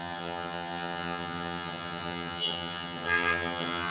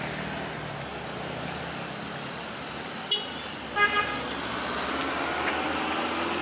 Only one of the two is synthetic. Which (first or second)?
first